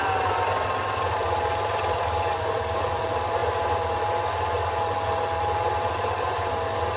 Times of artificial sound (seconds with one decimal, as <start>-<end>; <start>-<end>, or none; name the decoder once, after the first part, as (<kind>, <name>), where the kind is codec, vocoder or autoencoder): 0.0-3.4 (vocoder, BigVGAN v2)